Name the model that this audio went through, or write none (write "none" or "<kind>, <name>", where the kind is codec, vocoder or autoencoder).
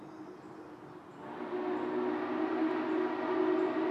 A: none